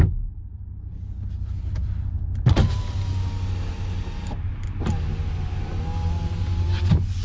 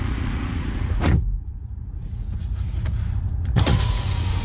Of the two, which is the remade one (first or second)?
second